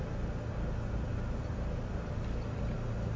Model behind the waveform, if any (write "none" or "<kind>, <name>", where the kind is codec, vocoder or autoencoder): none